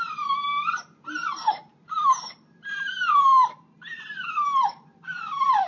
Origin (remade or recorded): recorded